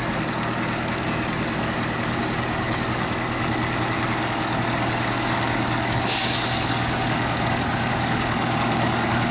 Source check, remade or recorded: remade